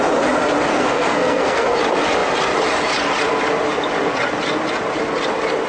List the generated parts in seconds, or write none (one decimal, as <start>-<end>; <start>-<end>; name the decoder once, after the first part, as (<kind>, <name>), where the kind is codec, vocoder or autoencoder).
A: 0.7-1.8 (codec, SNAC)